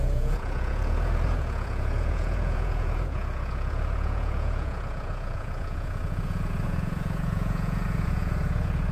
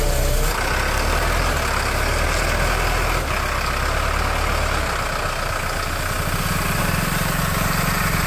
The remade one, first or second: first